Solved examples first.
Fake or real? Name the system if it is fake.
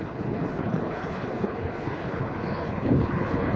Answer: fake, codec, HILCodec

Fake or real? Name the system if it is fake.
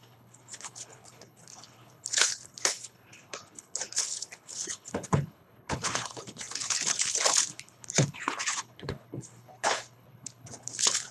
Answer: fake, codec, HILCodec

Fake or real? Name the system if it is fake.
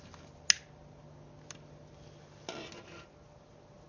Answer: real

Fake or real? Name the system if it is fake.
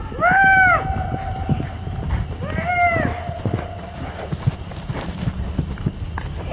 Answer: real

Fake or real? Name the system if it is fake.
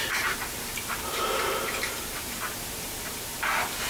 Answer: fake, vocoder, BigVGAN v2